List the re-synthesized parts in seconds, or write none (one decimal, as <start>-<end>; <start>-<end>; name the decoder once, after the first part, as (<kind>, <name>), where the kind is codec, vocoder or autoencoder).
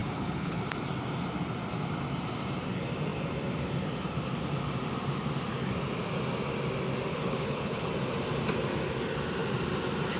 0.0-0.6 (codec, HILCodec); 7.1-7.9